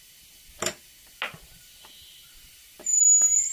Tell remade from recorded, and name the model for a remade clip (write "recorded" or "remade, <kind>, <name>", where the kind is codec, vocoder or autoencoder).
recorded